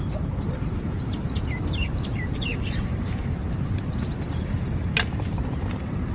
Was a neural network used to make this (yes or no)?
yes